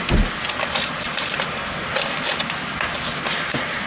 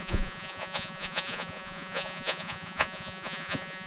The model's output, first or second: second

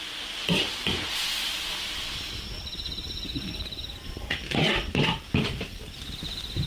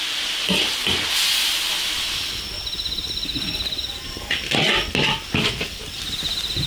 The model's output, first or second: first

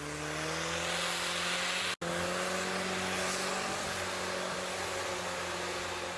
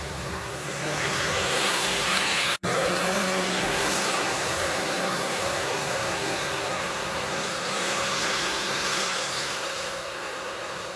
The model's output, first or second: second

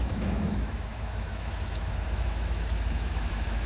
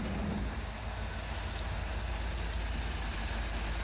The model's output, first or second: first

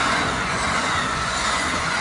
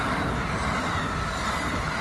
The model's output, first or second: first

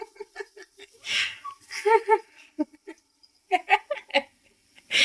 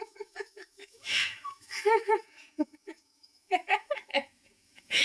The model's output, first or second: second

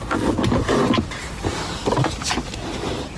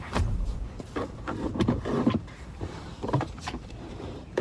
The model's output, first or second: second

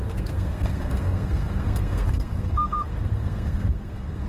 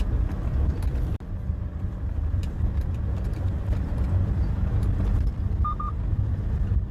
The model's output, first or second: first